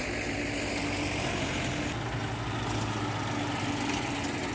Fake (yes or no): no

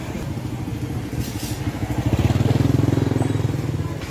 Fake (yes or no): no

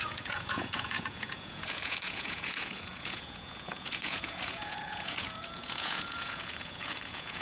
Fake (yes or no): yes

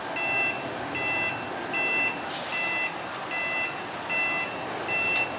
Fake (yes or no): no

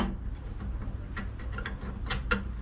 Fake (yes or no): no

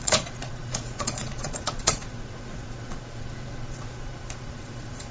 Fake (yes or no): yes